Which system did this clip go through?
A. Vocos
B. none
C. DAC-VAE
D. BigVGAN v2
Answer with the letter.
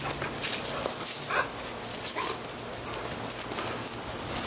B